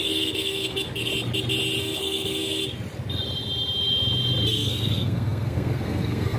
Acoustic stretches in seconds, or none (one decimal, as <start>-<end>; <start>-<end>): 1.1-1.8; 2.6-4.5